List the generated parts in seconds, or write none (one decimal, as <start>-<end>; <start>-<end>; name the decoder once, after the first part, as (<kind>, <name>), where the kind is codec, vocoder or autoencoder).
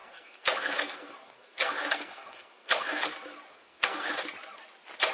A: 0.0-3.1 (codec, SNAC); 3.5-4.1